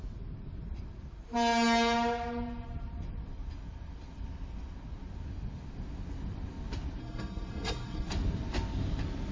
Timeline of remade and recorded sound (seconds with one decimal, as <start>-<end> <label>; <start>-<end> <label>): 0.0-7.0 recorded; 7.0-8.1 remade; 8.1-9.3 recorded